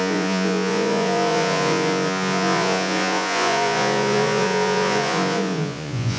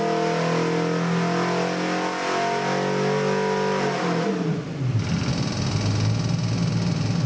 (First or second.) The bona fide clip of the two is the second